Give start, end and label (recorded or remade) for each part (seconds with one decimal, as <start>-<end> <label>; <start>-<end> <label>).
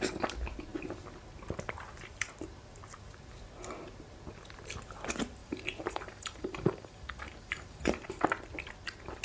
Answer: 0.0-5.4 recorded; 5.4-8.2 remade; 8.2-9.2 recorded